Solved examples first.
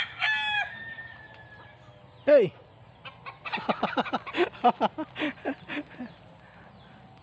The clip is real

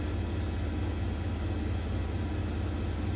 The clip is real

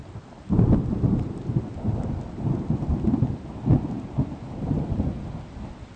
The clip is real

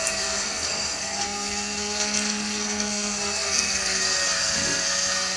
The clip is fake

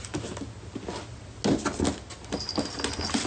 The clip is real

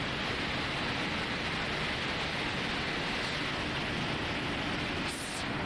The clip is real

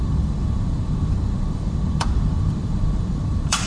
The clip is fake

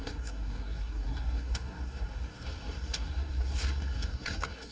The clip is fake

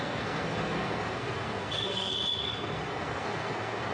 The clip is fake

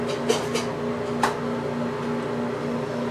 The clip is real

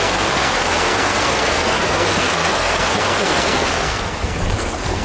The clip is fake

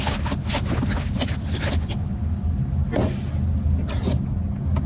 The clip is real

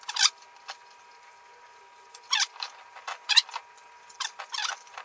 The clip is fake